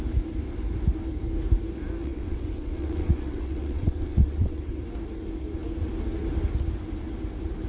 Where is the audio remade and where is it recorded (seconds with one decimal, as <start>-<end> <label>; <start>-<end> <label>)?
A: 0.0-2.0 recorded; 2.0-4.8 remade; 4.8-7.7 recorded